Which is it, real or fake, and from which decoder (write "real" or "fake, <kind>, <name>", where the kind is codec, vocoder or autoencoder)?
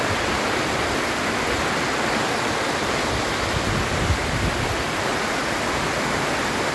real